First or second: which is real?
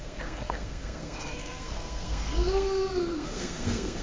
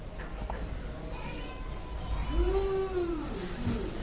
second